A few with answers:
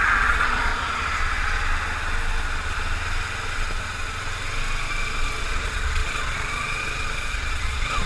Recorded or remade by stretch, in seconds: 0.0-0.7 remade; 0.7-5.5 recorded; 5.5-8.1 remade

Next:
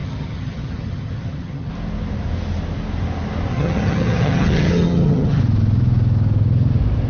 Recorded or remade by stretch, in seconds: 0.0-1.7 remade; 1.7-3.5 recorded; 3.5-5.4 remade; 5.4-7.1 recorded

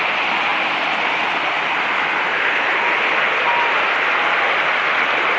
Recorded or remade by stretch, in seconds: 0.0-5.4 recorded